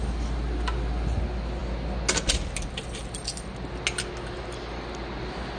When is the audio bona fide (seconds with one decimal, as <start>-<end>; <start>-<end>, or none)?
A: 0.0-5.6

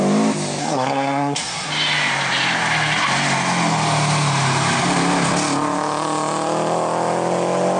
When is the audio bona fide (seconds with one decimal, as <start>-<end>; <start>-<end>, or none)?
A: 0.0-0.6; 1.7-7.8

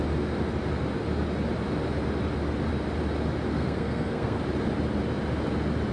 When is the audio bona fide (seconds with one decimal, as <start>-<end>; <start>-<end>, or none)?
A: 0.0-3.5; 4.4-5.9

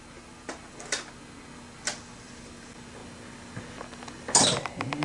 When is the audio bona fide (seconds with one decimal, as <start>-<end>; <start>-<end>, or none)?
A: 0.0-5.0

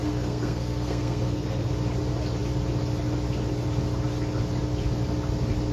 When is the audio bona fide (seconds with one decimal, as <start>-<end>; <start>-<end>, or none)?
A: 1.7-5.7